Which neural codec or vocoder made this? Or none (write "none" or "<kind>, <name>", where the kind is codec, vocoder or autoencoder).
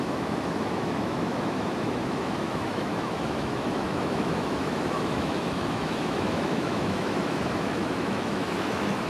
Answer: autoencoder, DAC-VAE